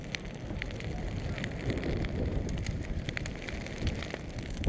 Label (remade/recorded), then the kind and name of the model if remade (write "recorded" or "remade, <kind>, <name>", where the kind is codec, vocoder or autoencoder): remade, vocoder, BigVGAN v2